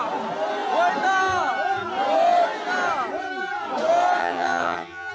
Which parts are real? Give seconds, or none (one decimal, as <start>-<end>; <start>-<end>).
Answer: 0.0-4.2

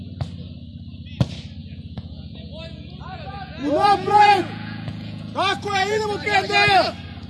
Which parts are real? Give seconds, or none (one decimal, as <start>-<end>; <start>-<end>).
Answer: 0.0-1.6; 6.0-7.3

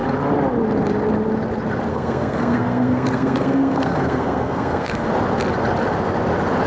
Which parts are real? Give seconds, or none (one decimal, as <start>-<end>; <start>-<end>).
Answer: 0.0-1.9; 5.1-6.7

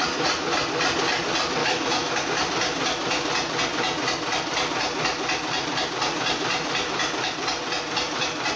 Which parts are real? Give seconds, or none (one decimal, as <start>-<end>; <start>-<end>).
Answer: 0.0-1.6; 2.2-8.6

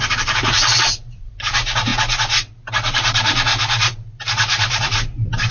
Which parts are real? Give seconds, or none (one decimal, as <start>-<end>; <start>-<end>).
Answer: 1.9-2.5; 3.5-4.2

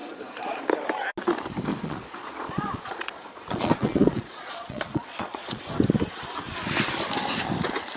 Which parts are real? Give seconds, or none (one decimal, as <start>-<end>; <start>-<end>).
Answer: 0.6-1.7; 5.6-8.0